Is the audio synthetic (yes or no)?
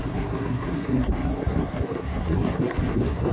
yes